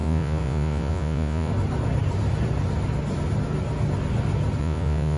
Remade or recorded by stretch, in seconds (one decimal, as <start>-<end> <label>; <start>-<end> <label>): 0.0-1.5 remade; 1.5-4.6 recorded; 4.6-5.2 remade